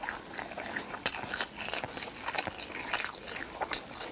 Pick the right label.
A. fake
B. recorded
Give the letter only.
B